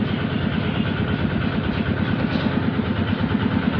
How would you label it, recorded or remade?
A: recorded